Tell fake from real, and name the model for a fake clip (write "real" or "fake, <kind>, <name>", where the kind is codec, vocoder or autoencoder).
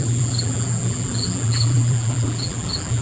fake, vocoder, BigVGAN v2